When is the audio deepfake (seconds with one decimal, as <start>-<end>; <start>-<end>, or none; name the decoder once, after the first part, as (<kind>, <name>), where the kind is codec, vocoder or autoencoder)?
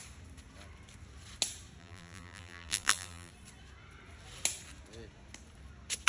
1.8-3.3 (vocoder, BigVGAN v2)